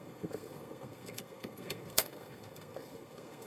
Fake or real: fake